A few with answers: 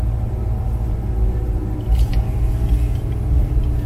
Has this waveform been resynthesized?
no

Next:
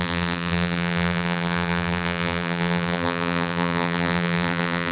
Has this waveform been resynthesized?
yes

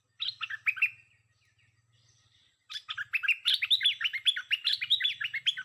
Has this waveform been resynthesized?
no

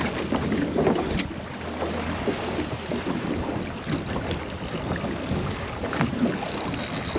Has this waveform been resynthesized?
no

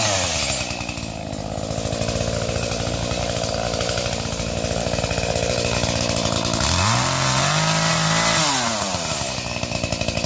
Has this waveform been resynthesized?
no